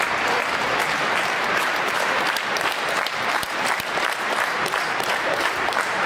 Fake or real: fake